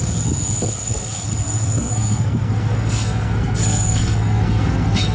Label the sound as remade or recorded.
remade